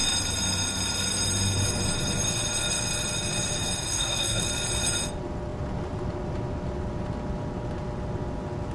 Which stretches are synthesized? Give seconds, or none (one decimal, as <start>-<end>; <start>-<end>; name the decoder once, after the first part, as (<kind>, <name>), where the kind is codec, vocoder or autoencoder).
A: 3.8-4.4 (codec, SNAC)